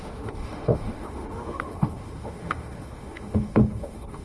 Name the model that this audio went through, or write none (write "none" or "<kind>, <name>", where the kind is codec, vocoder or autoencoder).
autoencoder, DAC-VAE